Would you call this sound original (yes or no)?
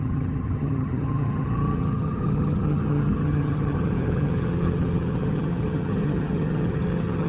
no